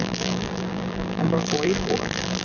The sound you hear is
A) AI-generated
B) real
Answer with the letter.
A